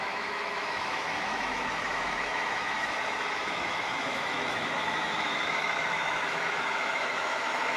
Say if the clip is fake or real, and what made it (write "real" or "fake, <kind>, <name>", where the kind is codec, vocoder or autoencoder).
fake, autoencoder, DAC-VAE